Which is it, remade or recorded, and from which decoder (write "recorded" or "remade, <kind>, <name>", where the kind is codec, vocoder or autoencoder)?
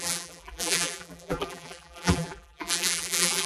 remade, vocoder, BigVGAN v2